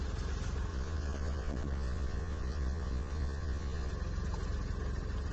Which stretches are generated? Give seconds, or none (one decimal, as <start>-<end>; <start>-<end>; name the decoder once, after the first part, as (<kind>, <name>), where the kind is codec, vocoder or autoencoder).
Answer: 0.7-3.9 (vocoder, Vocos)